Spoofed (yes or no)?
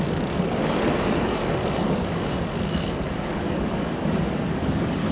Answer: yes